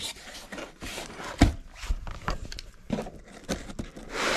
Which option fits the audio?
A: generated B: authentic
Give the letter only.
B